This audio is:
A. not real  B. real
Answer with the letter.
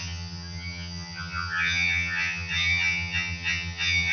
A